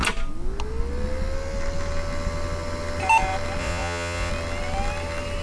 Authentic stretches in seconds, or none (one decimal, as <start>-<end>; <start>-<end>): 0.0-3.6; 4.3-5.4